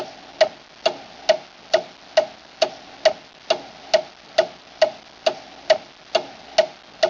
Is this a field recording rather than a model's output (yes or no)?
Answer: yes